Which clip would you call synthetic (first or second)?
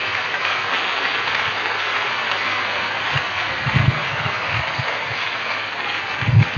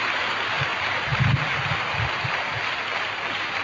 first